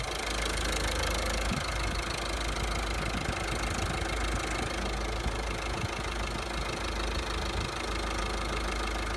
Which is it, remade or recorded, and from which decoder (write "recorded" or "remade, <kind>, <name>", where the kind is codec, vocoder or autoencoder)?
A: recorded